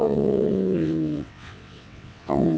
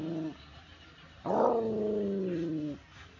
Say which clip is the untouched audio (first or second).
second